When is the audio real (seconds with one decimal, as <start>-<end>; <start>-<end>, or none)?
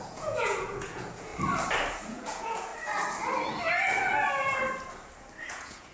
1.3-1.9; 2.7-5.5